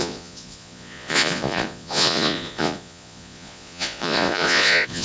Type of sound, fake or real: fake